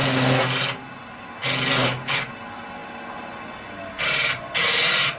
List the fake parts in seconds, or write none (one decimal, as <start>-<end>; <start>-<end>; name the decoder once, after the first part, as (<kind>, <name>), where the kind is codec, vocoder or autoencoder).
none